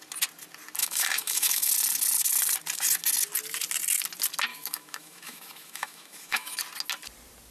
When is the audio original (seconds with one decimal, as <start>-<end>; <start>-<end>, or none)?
0.0-0.8; 1.7-4.5; 6.6-7.5